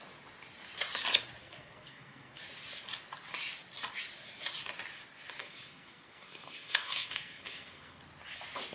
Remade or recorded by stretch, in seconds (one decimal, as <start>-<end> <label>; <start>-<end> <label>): 0.0-1.4 recorded; 1.4-2.4 remade; 2.4-5.4 recorded; 5.4-8.0 remade; 8.0-8.7 recorded